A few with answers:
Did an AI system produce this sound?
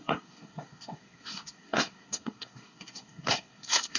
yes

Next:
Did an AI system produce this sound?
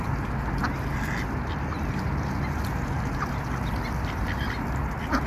no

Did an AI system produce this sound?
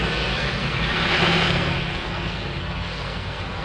yes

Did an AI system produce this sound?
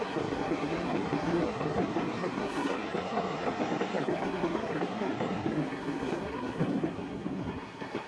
yes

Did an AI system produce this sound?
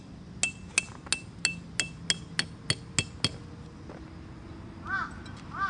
no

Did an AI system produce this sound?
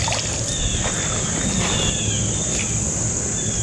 no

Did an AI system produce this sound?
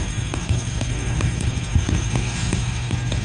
yes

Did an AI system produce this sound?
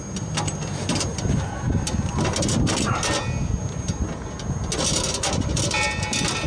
no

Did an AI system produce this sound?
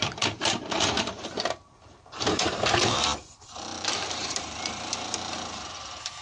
yes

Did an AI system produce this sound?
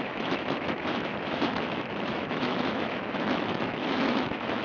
yes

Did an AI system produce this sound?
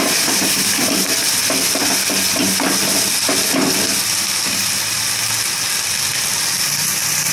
yes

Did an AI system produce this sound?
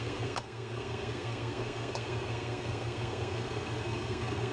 yes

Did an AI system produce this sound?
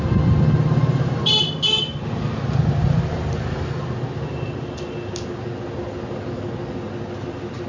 no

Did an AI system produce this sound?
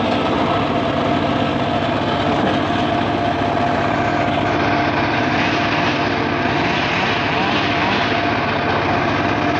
no